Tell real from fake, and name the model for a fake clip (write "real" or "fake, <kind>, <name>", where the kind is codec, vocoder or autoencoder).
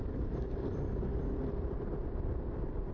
fake, vocoder, BigVGAN v2